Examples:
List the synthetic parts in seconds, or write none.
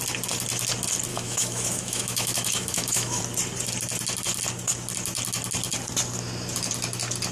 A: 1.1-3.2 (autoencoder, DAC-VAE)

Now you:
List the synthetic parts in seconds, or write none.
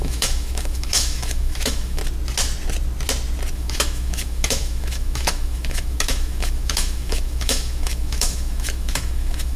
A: 0.0-2.0 (autoencoder, DAC-VAE); 3.5-9.6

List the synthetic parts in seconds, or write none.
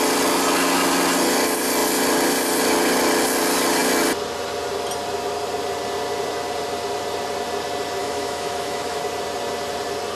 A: 8.0-9.0 (autoencoder, DAC-VAE)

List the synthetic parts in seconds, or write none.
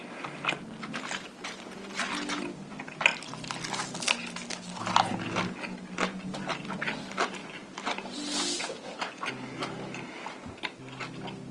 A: none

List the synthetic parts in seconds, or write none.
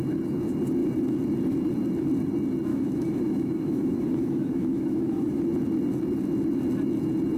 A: 2.7-5.4 (autoencoder, DAC-VAE)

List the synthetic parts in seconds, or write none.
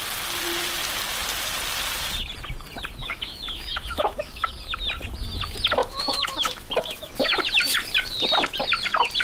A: 3.0-4.5 (autoencoder, DAC-VAE); 5.8-7.4